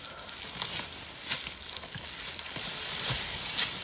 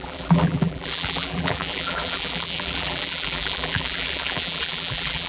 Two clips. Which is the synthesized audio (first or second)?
second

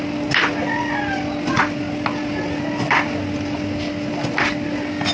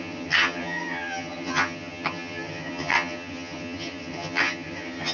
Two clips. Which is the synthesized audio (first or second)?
second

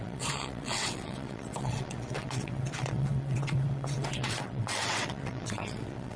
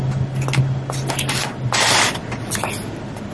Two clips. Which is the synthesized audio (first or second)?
first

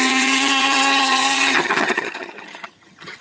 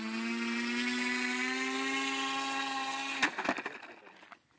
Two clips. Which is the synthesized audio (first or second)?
first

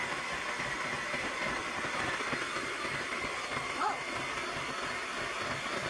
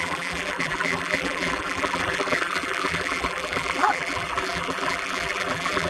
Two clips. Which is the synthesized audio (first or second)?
second